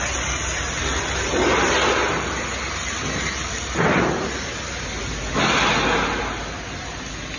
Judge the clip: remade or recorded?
recorded